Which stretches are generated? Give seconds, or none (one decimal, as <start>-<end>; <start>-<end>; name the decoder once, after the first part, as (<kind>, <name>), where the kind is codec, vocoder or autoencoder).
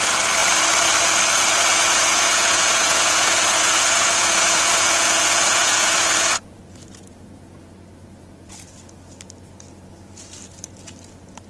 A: 1.7-6.6 (vocoder, Vocos)